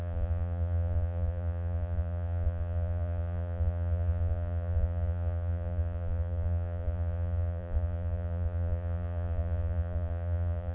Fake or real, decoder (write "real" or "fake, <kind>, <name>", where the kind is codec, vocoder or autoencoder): fake, vocoder, Vocos